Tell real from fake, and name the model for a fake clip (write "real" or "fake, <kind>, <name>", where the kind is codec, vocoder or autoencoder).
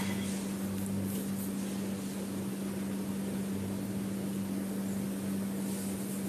real